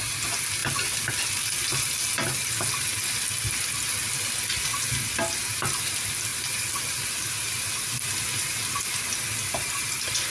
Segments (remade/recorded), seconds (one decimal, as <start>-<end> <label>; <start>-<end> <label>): 0.0-10.3 recorded